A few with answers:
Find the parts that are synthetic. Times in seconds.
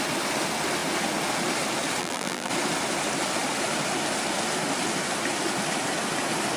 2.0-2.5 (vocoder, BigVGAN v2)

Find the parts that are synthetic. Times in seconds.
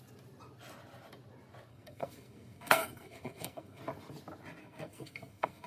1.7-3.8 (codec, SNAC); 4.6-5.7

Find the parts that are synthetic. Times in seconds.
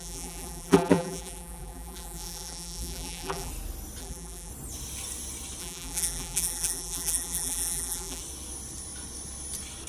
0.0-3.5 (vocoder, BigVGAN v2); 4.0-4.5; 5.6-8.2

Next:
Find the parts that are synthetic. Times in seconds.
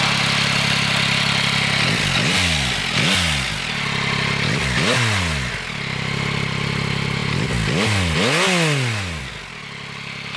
none